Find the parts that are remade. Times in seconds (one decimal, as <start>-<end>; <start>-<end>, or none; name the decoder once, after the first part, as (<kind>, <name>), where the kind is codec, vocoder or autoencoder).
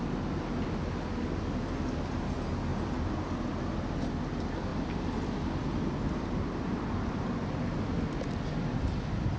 2.7-3.5 (vocoder, BigVGAN v2); 4.7-7.6